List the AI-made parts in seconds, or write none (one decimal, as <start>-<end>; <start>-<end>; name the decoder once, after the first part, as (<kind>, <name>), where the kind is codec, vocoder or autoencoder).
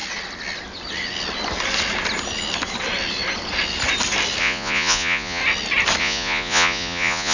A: 4.4-5.4 (vocoder, Vocos); 6.0-7.3